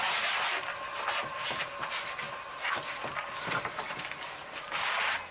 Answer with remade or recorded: recorded